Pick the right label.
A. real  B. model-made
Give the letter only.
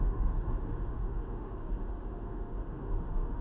B